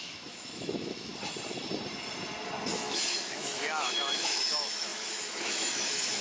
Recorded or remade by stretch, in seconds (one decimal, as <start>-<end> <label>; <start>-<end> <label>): 0.0-1.1 remade; 1.1-2.6 recorded; 2.6-6.2 remade